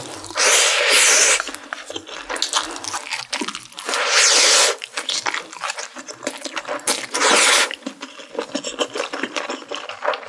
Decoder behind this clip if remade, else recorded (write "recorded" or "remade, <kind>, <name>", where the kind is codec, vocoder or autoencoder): recorded